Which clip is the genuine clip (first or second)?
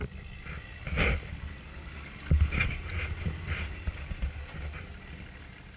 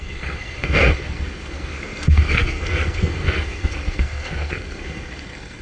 first